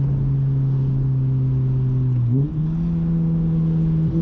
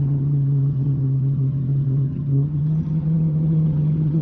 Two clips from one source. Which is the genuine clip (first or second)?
first